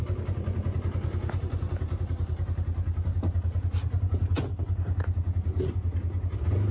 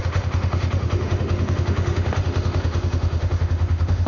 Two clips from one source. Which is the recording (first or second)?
first